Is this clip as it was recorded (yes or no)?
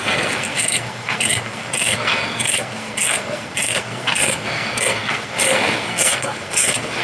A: no